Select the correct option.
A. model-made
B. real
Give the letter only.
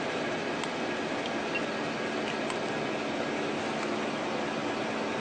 B